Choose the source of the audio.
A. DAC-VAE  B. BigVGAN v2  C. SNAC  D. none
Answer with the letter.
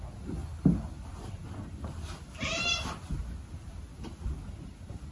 D